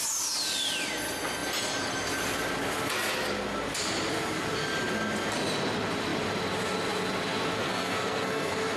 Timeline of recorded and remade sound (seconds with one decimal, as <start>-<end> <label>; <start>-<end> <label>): 0.0-7.6 recorded; 7.6-8.8 remade